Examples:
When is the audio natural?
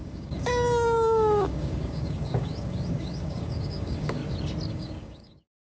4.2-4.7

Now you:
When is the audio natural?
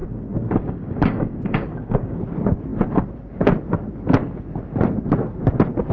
2.2-5.9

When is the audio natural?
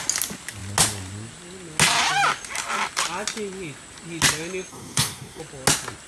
0.0-4.7; 5.4-6.1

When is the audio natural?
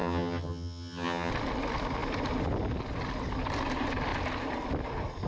1.3-5.3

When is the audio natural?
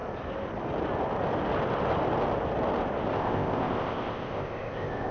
0.0-3.1